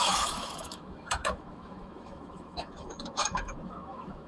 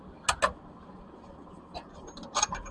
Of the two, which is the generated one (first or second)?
first